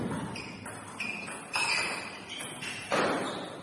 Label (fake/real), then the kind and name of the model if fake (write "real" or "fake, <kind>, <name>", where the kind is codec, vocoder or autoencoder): real